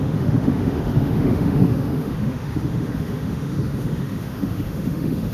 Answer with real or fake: fake